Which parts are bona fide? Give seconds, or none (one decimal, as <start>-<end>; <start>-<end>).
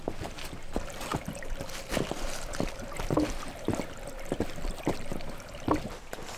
0.0-1.1; 4.9-6.4